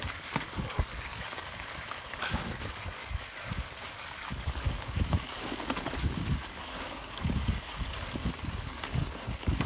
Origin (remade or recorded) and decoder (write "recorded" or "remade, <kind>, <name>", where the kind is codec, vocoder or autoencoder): remade, codec, DAC